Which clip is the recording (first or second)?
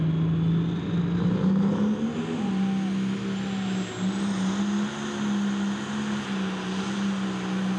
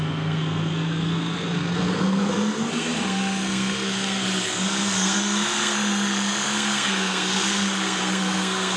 first